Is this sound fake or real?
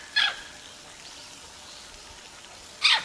real